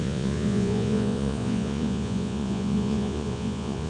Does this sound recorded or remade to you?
remade